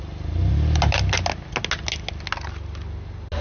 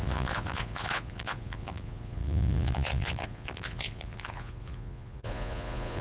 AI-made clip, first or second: second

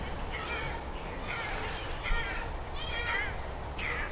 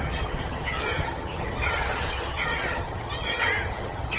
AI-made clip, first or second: second